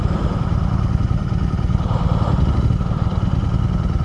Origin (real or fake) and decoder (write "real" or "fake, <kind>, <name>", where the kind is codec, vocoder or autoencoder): fake, vocoder, BigVGAN v2